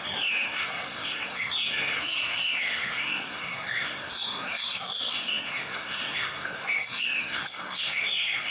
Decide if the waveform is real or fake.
fake